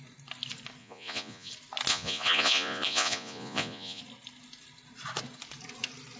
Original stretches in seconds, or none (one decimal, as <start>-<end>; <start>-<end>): 0.0-0.8; 1.5-1.9; 4.0-6.2